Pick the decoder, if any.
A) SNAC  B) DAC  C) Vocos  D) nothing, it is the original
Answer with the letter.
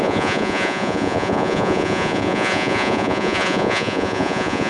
C